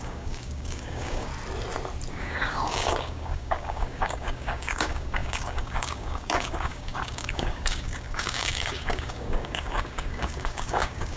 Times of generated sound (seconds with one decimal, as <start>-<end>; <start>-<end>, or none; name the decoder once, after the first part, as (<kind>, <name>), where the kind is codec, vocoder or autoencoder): 0.0-1.3 (codec, DAC); 2.1-11.2